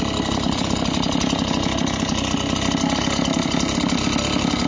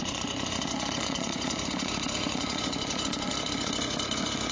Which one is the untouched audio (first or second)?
first